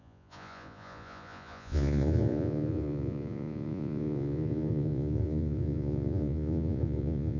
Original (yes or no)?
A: no